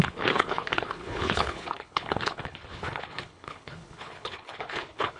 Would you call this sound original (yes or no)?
no